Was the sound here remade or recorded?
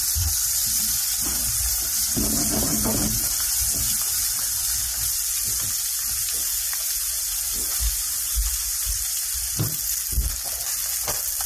recorded